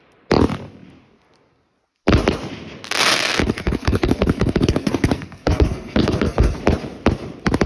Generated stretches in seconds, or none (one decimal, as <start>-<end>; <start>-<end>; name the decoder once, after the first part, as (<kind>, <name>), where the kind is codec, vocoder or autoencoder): 3.4-6.6 (codec, SNAC)